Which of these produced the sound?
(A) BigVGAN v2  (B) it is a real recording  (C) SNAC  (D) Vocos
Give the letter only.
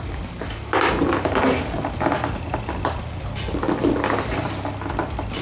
B